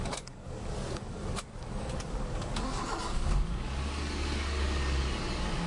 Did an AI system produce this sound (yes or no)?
yes